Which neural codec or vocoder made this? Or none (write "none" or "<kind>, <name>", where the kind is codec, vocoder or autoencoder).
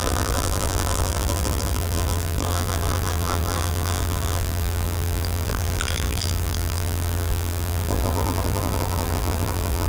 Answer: vocoder, BigVGAN v2